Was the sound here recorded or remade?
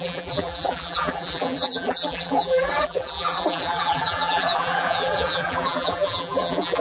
remade